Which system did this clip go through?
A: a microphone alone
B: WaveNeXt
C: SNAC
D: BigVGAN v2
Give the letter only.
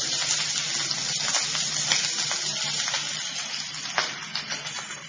A